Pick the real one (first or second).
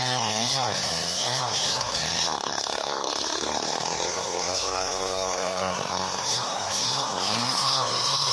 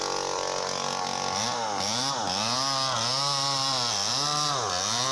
second